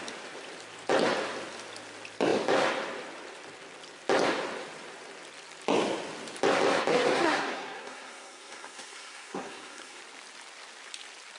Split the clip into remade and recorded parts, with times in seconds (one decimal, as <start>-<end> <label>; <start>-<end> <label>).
0.0-6.9 recorded; 6.9-10.0 remade; 10.0-11.4 recorded